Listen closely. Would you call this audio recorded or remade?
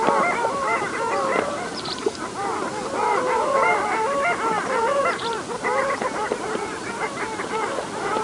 remade